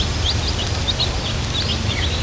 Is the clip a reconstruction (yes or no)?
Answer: no